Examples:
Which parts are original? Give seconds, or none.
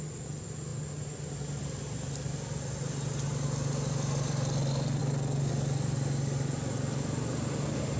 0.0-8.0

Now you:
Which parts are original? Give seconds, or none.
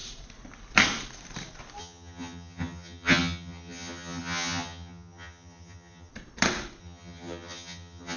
0.0-1.8; 6.1-6.8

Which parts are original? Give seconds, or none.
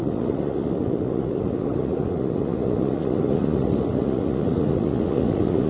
none